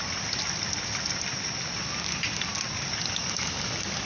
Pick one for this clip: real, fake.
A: real